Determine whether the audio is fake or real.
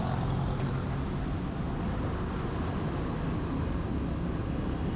real